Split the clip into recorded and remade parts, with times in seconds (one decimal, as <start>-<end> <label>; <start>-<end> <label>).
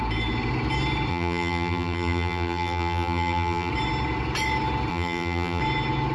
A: 0.0-1.1 recorded; 1.1-3.7 remade; 3.7-4.9 recorded; 4.9-5.6 remade; 5.6-6.1 recorded